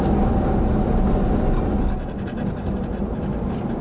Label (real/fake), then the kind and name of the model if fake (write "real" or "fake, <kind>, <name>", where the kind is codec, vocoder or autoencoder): real